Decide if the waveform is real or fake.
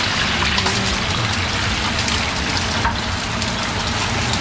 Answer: real